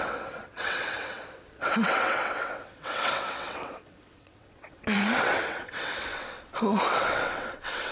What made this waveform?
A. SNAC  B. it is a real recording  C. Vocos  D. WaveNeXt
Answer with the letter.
D